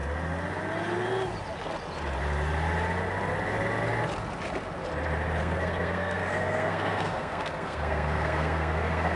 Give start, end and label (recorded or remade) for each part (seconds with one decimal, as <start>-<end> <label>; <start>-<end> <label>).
0.0-5.4 recorded; 5.4-9.2 remade